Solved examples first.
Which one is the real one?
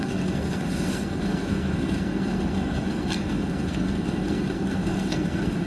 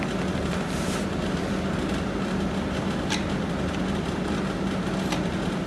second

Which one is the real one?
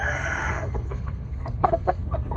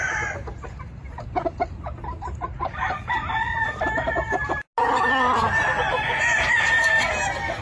second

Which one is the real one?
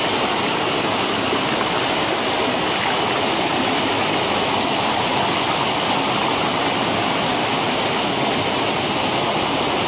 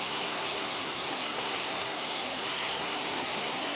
first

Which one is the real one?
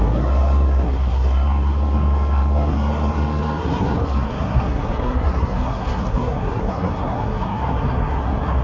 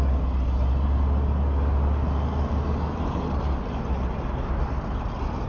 second